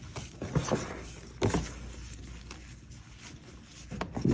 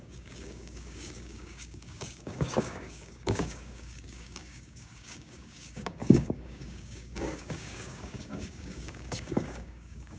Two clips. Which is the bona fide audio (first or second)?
first